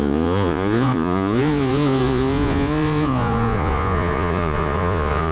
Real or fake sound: fake